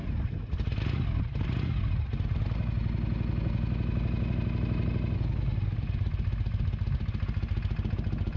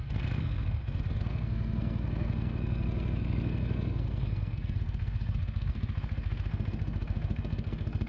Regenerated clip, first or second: second